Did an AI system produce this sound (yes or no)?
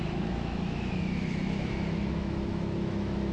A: yes